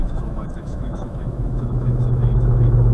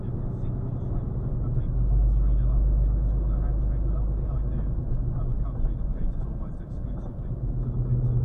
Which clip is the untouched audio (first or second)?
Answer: second